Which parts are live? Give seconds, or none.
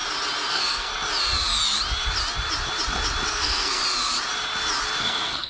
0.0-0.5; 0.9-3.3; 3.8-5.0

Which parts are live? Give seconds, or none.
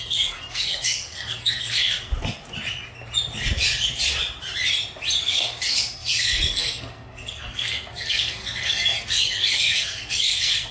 2.1-5.2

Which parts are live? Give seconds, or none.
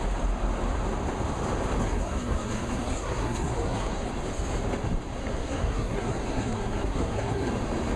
0.0-1.8; 4.1-5.2; 7.5-8.0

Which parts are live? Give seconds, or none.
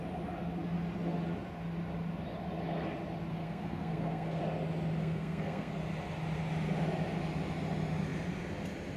0.0-3.3; 4.4-5.0; 5.7-9.0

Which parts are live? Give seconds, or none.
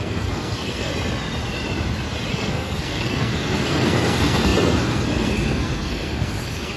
0.9-2.3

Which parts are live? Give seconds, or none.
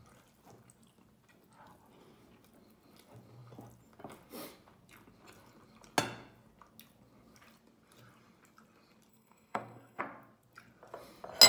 0.0-9.1; 10.0-11.5